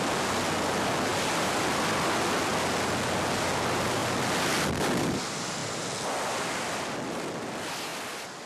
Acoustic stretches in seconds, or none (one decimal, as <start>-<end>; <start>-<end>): 0.0-8.5